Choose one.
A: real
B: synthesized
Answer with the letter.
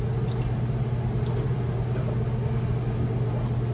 A